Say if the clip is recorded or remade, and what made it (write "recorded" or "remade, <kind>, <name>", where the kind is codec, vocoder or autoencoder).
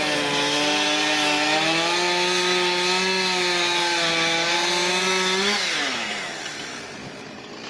recorded